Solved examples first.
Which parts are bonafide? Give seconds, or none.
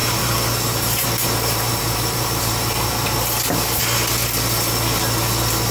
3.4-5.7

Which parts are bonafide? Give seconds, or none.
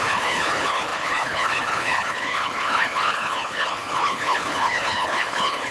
none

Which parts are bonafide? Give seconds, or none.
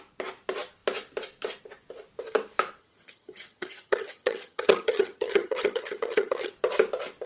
0.0-2.8; 6.5-7.3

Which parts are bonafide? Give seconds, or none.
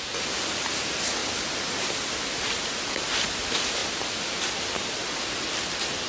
1.2-1.8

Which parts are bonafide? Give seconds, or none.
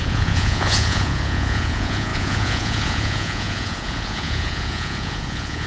none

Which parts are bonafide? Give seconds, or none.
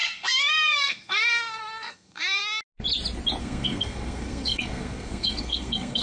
2.4-3.4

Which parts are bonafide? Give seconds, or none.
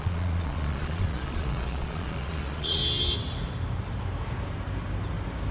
2.8-5.5